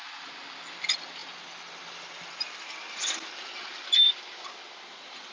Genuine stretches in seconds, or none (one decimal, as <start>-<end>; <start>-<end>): 0.0-5.3